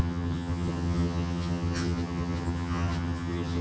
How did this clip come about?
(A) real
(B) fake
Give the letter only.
B